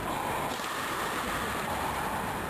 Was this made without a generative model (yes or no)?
no